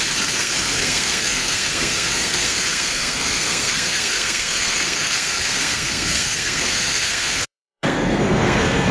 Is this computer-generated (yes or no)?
yes